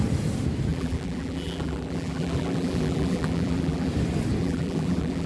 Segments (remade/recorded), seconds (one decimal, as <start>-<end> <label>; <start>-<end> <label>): 0.0-0.7 recorded; 0.7-3.9 remade; 3.9-4.4 recorded; 4.4-5.3 remade